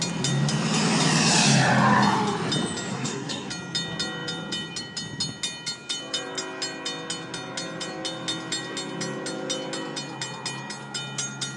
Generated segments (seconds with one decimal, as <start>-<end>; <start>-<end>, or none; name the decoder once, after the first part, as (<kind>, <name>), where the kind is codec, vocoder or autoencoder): 2.9-3.5 (codec, SNAC)